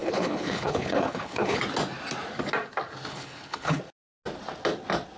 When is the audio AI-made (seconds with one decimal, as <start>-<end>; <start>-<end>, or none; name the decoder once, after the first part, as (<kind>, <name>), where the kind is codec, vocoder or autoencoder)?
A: 0.0-1.6 (codec, HILCodec); 3.1-3.8